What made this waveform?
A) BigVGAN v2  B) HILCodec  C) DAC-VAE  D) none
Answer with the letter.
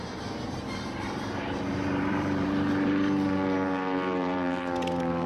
A